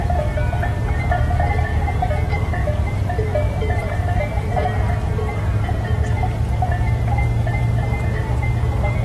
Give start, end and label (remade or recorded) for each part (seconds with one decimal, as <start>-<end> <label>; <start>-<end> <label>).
0.0-2.6 recorded; 2.6-4.7 remade; 4.7-9.0 recorded